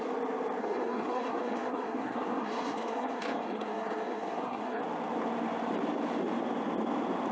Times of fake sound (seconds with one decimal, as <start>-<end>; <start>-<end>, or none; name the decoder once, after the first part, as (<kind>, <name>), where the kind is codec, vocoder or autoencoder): 0.6-4.8 (codec, SNAC)